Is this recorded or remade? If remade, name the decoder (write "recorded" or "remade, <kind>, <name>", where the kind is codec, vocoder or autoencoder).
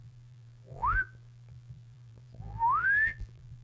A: remade, vocoder, BigVGAN v2